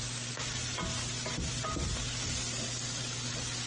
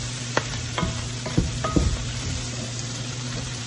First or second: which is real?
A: first